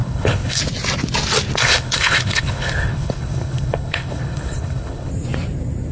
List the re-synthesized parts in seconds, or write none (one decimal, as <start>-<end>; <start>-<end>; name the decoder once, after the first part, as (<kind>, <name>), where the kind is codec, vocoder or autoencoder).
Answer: 0.0-0.6 (codec, HILCodec); 1.6-5.1